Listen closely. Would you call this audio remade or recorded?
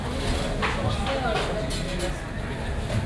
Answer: recorded